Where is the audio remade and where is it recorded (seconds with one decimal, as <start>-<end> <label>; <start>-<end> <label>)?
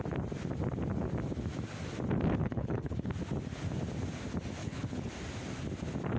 0.0-2.4 recorded; 2.4-3.1 remade; 3.1-4.6 recorded; 4.6-5.1 remade; 5.1-6.2 recorded